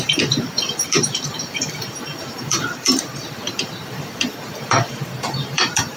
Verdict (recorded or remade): remade